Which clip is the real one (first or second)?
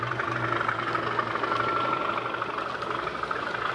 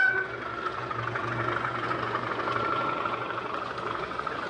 first